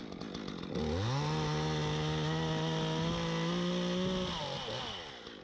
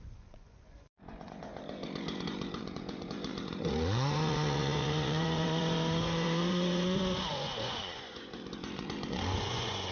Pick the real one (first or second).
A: first